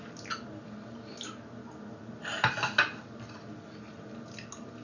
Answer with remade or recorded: recorded